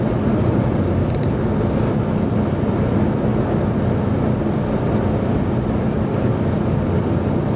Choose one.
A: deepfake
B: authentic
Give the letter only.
B